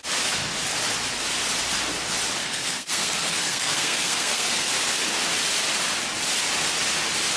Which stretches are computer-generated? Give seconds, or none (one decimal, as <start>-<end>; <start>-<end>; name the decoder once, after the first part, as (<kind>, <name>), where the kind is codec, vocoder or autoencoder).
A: 2.4-4.7 (codec, SNAC)